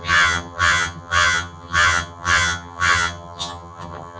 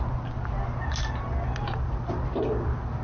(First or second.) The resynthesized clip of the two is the first